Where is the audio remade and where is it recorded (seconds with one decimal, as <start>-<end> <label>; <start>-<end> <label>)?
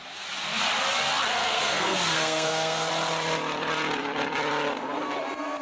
0.0-1.3 recorded; 1.3-2.9 remade; 2.9-5.6 recorded